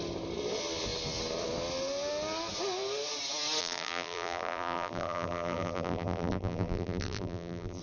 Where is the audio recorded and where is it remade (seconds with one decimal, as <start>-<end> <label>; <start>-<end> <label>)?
0.0-3.6 recorded; 3.6-7.8 remade